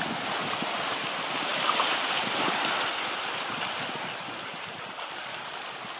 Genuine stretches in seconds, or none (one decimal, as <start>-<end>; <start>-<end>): 0.0-6.0